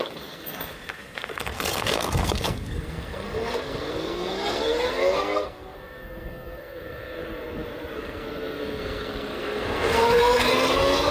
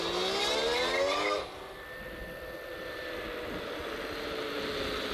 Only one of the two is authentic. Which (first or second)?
second